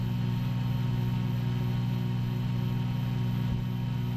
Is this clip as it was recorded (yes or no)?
yes